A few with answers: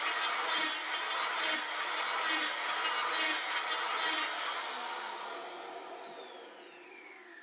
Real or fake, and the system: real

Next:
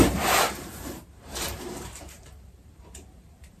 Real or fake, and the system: fake, vocoder, BigVGAN v2